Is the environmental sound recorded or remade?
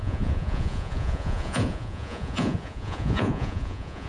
remade